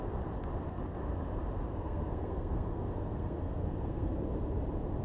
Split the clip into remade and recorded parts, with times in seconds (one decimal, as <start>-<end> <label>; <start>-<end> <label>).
0.0-1.7 recorded; 1.7-4.1 remade; 4.1-5.0 recorded